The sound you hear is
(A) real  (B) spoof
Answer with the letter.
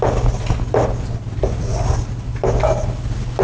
A